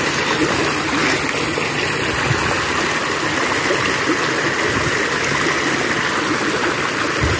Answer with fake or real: real